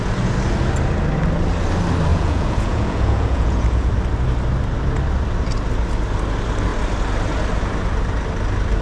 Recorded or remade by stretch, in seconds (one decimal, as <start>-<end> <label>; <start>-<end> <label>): 0.0-2.1 recorded; 2.1-3.9 remade; 3.9-8.8 recorded